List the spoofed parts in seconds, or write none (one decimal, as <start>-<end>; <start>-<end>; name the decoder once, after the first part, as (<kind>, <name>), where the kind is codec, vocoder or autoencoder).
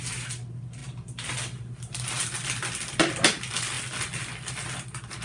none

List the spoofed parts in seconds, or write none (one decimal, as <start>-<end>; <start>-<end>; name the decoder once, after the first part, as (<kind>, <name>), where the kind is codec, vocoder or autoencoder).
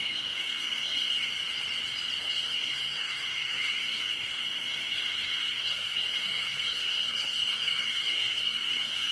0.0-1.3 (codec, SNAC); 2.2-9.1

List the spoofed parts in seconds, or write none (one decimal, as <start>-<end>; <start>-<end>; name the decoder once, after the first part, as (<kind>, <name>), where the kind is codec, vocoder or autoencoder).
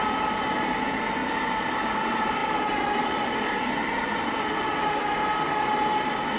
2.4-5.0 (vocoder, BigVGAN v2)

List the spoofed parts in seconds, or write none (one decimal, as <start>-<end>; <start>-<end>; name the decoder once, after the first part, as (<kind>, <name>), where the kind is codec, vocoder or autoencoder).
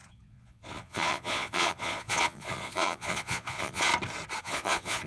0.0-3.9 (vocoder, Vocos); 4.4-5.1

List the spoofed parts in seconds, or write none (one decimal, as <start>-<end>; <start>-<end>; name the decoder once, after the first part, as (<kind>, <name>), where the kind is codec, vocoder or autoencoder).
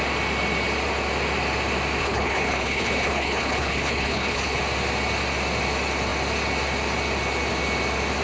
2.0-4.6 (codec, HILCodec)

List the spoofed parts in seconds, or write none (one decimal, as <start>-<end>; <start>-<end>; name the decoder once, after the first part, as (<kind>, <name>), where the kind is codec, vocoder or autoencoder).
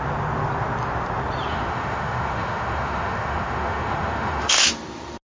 1.5-4.7 (autoencoder, DAC-VAE)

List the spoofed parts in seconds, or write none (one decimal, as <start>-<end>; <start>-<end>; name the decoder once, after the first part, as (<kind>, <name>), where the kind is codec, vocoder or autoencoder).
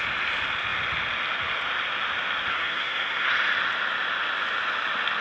2.5-3.3 (codec, SNAC)